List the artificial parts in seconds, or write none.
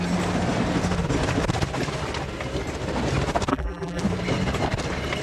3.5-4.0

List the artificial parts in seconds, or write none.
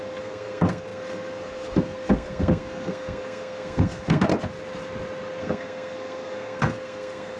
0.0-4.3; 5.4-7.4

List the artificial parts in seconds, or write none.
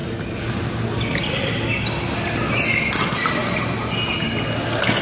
none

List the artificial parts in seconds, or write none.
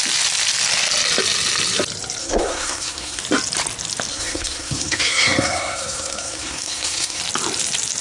2.2-3.2; 4.1-7.2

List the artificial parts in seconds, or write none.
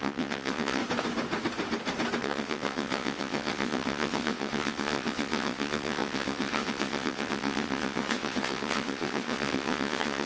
0.0-0.8; 2.2-10.3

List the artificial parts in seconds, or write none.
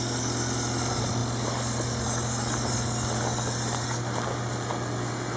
none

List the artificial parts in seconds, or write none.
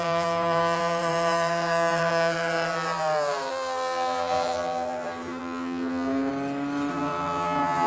0.0-6.3; 6.9-7.9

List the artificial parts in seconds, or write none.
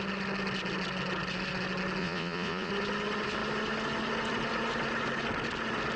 2.0-2.7